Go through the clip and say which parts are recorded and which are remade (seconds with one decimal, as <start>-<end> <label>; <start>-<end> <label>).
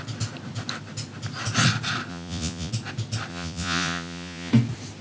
0.0-2.1 recorded; 2.1-2.7 remade; 2.7-3.3 recorded; 3.3-4.5 remade; 4.5-5.0 recorded